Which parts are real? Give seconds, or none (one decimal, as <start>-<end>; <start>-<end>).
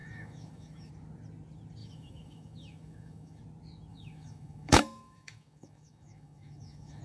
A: 0.9-1.8; 3.4-3.9